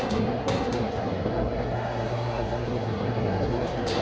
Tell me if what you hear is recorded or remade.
remade